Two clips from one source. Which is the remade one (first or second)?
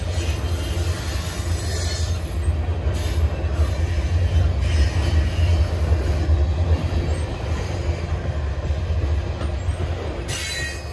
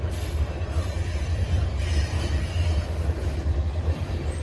second